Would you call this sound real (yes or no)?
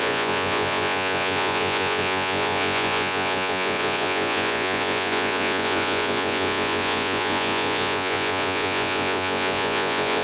no